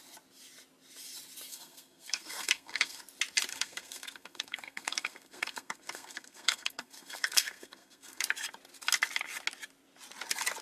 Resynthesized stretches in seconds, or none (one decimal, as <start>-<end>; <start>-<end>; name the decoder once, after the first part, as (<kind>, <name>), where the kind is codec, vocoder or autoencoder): 1.5-3.0 (codec, SNAC); 3.5-8.2